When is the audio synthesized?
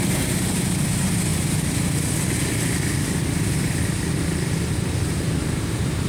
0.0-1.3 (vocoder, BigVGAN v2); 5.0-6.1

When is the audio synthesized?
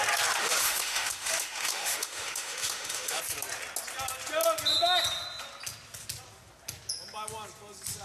0.4-3.2 (autoencoder, DAC-VAE)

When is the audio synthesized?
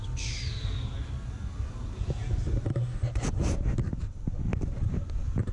none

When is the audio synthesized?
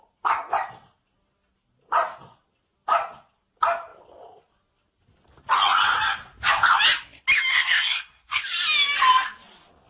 7.5-8.4 (codec, SNAC)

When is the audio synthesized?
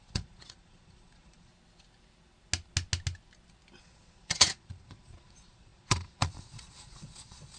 0.0-1.5 (vocoder, Vocos); 3.8-7.6